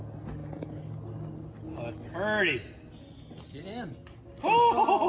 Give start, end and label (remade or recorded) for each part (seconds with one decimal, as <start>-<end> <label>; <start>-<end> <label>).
0.0-5.1 recorded